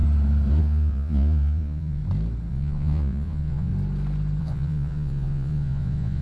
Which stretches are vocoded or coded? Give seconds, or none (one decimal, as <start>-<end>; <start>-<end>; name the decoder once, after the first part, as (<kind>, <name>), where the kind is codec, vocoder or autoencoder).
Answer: 0.6-2.0 (vocoder, Vocos); 2.5-3.7; 4.4-6.2